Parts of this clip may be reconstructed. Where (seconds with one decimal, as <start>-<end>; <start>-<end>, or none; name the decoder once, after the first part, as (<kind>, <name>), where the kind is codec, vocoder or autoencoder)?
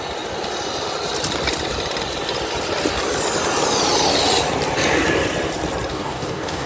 5.9-6.7 (codec, DAC)